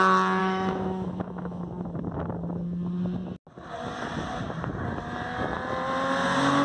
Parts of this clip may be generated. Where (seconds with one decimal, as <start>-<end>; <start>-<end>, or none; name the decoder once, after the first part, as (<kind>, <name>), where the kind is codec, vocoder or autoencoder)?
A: 0.4-1.6 (autoencoder, DAC-VAE)